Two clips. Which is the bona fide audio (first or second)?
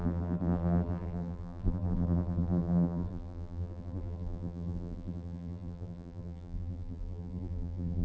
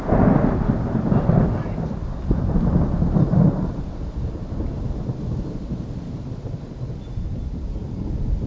second